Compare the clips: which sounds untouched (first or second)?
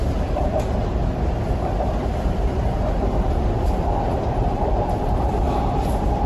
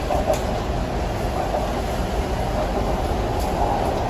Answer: second